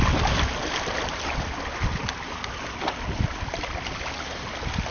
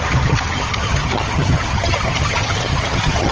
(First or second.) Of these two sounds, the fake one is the second